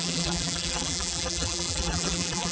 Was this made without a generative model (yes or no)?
no